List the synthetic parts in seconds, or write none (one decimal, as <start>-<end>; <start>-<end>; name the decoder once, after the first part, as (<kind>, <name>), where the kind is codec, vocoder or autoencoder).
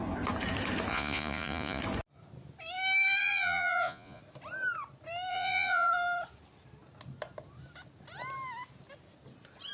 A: 0.9-1.8 (vocoder, Vocos); 3.2-4.2; 5.3-5.9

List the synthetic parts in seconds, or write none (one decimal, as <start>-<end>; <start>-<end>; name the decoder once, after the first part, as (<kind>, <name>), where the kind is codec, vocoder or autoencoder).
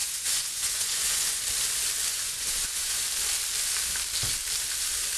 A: 0.0-1.4 (vocoder, Vocos); 2.1-3.0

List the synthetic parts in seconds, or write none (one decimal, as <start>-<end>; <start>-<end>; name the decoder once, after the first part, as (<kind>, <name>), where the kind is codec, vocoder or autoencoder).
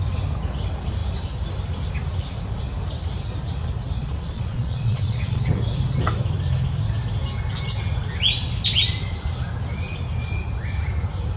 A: 4.0-5.5 (vocoder, Vocos)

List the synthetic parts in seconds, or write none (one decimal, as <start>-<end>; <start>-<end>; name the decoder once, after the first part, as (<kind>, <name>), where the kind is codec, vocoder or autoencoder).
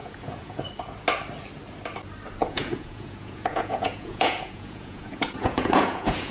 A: 0.0-0.6 (vocoder, Vocos); 2.4-6.3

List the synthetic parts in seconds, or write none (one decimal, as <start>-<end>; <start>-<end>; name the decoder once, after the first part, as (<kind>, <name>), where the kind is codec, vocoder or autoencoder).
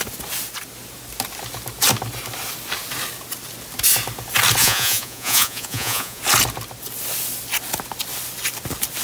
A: 4.6-6.2 (vocoder, Vocos)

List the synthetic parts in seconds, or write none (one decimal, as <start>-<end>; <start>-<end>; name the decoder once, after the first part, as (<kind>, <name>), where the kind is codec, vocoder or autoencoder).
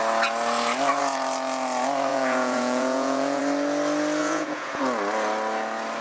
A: 2.1-3.4 (vocoder, Vocos); 4.2-4.8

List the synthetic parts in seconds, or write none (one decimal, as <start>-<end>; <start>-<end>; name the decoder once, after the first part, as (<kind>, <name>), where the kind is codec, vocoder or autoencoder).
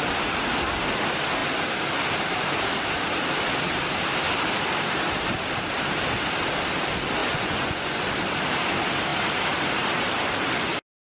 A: 7.2-8.0 (vocoder, Vocos)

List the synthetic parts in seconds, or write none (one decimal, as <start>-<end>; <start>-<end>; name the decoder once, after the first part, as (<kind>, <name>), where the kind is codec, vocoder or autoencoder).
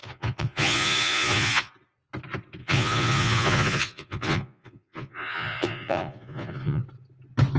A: 0.0-1.7 (vocoder, Vocos); 2.6-6.8